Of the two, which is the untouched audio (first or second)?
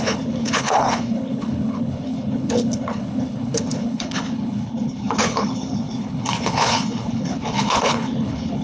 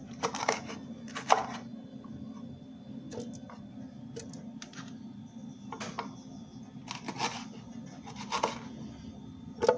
second